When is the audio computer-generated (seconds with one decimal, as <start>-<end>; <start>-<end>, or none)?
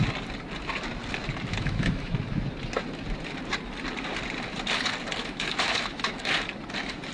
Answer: 1.5-2.1; 5.2-6.2